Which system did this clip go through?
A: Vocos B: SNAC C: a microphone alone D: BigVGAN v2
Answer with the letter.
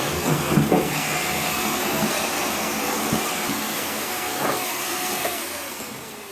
B